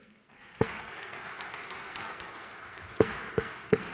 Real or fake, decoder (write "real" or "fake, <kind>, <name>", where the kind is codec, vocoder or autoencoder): fake, codec, SNAC